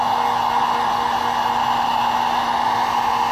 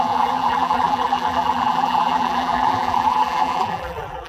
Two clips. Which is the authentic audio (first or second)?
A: first